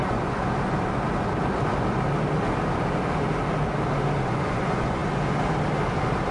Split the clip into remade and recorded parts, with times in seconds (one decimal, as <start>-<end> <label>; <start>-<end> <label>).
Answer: 0.0-0.4 remade; 0.4-4.2 recorded; 4.2-5.0 remade; 5.0-6.3 recorded